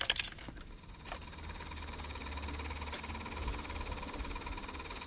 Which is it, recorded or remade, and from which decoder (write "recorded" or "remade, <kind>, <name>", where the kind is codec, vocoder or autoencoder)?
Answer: recorded